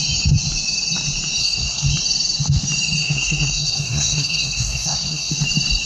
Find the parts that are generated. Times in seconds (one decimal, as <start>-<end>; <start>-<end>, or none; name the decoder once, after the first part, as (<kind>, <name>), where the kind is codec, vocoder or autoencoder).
1.4-1.9 (codec, SNAC); 3.0-5.3